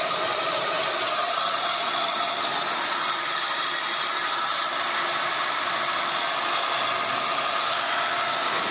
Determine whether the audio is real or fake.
real